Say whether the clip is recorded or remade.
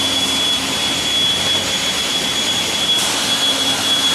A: recorded